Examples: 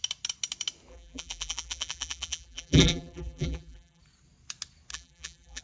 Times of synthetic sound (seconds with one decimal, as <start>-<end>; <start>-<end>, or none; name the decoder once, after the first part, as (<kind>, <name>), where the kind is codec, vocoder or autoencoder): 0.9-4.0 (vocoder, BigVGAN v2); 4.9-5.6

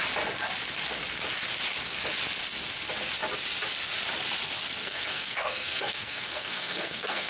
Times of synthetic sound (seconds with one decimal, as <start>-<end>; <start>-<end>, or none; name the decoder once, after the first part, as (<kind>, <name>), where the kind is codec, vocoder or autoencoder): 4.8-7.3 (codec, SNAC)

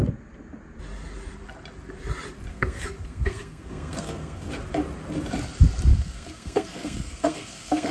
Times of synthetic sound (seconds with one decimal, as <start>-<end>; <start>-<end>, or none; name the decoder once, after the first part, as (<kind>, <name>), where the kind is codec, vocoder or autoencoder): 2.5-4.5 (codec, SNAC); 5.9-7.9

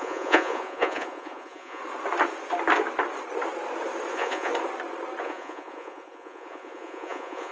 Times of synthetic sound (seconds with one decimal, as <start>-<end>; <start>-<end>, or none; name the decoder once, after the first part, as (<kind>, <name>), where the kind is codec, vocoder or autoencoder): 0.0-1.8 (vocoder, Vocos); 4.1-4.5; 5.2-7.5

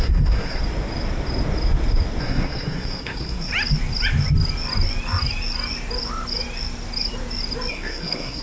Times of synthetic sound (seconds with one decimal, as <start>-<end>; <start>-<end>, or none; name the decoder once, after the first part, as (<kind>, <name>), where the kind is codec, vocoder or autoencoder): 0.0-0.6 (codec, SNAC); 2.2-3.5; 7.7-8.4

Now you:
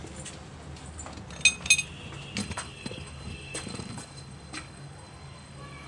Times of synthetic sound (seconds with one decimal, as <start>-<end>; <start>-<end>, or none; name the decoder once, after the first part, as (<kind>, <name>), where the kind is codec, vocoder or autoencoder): 2.4-5.9 (codec, DAC)

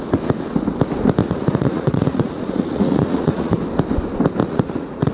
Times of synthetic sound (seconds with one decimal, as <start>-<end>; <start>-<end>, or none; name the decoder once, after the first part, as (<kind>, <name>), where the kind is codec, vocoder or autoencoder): 1.2-3.6 (vocoder, Vocos); 4.4-5.1

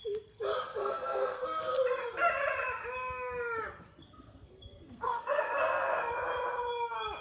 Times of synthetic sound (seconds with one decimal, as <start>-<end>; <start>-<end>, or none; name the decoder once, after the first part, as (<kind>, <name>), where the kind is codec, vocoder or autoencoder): 0.8-1.6 (codec, SNAC); 4.0-6.1